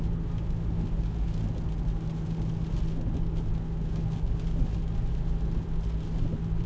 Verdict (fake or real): real